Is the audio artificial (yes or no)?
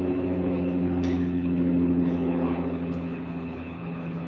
yes